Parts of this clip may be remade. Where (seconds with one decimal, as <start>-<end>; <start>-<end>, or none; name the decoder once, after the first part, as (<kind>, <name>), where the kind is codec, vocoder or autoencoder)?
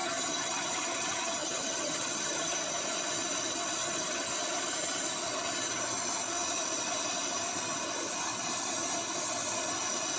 0.0-2.6 (vocoder, HiFi-GAN); 3.8-4.3